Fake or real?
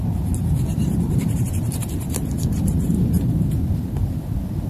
fake